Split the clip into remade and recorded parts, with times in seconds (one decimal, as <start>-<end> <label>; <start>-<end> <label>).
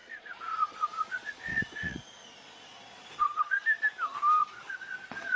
0.0-3.6 remade; 3.6-4.4 recorded; 4.4-5.4 remade